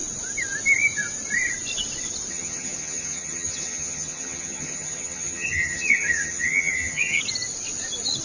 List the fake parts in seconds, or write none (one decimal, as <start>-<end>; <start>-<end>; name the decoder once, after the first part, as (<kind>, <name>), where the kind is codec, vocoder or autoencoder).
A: 2.3-7.2 (vocoder, HiFi-GAN)